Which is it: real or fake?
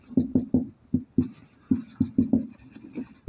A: real